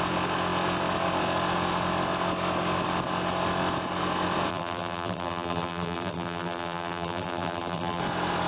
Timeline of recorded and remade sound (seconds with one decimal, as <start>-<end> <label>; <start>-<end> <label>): 0.0-4.5 recorded; 4.5-8.0 remade; 8.0-8.5 recorded